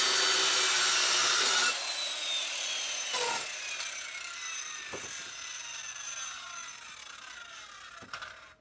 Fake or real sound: real